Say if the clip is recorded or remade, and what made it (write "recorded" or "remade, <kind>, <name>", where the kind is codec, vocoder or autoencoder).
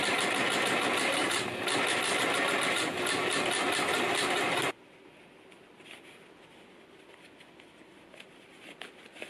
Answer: recorded